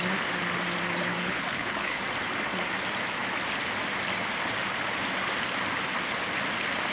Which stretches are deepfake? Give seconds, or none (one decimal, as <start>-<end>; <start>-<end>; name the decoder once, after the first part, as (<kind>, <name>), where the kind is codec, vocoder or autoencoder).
1.1-2.0 (codec, HILCodec)